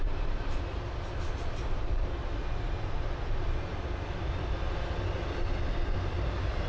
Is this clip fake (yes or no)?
no